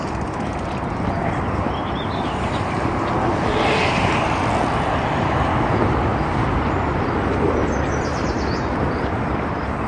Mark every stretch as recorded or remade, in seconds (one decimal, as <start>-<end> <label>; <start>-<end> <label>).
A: 0.0-9.9 recorded